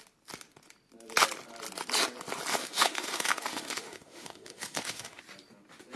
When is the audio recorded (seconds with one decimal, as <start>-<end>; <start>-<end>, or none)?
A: 0.0-2.5; 5.2-6.0